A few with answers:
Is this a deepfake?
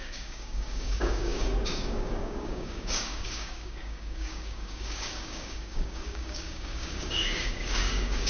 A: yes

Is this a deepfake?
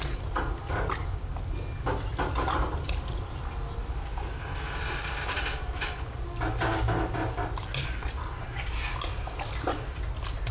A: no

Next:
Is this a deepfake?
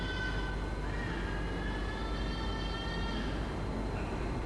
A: no